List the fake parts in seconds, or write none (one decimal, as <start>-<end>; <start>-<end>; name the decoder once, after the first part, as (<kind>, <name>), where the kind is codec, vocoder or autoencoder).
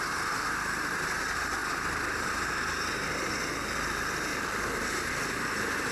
none